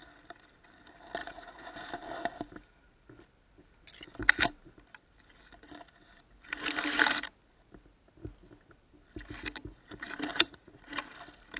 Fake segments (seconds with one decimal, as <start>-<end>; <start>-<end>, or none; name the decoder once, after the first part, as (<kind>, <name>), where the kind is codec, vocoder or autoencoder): 1.2-1.9 (vocoder, Vocos); 10.3-10.9